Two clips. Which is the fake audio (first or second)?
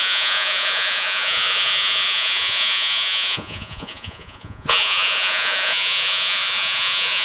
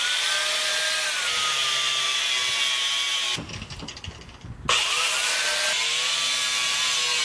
first